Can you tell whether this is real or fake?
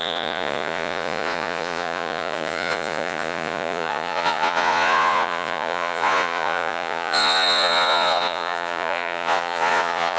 fake